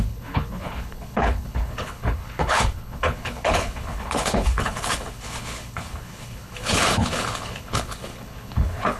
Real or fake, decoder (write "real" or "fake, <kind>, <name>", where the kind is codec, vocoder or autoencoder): fake, codec, HILCodec